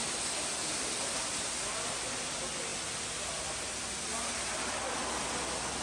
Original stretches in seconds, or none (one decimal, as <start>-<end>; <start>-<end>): 0.0-5.8